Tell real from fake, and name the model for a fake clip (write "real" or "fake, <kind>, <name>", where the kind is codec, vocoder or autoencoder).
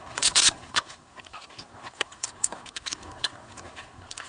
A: fake, codec, SNAC